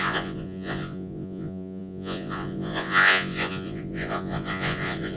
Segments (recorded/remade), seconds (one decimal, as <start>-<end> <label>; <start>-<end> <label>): 0.0-5.2 remade